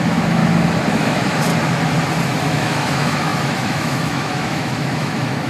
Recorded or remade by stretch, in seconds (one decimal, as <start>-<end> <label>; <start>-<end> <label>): 0.0-0.4 remade; 0.4-0.9 recorded; 0.9-1.5 remade; 1.5-2.4 recorded; 2.4-5.5 remade